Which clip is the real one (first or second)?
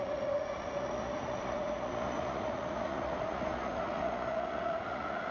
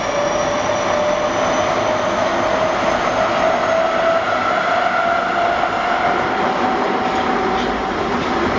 second